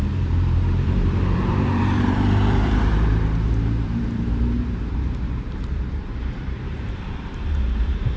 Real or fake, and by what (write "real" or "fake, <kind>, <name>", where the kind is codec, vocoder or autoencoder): fake, vocoder, BigVGAN v2